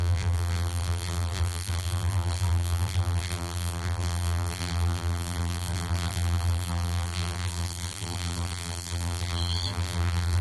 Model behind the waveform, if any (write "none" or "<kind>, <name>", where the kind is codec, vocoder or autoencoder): vocoder, BigVGAN v2